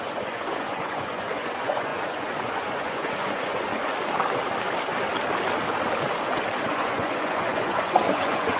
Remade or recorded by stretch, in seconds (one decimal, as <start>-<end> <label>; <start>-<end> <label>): 0.0-3.8 remade; 3.8-6.7 recorded; 6.7-8.6 remade